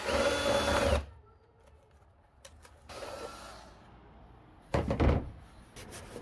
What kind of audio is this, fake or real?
real